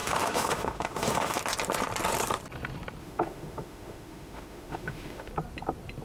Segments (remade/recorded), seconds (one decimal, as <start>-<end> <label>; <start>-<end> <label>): 0.0-1.4 remade; 1.4-3.0 recorded; 3.0-5.3 remade; 5.3-6.0 recorded